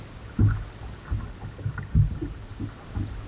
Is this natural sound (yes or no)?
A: yes